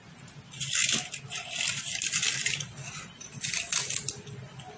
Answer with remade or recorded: recorded